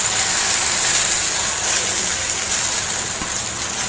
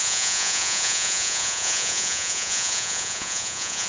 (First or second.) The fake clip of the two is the second